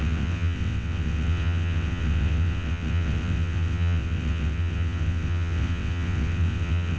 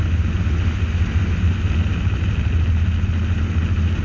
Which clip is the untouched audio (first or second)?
second